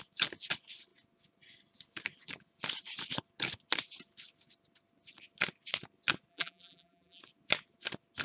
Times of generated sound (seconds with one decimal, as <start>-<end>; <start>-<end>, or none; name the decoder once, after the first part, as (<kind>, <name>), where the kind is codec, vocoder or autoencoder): 6.3-7.2 (vocoder, BigVGAN v2)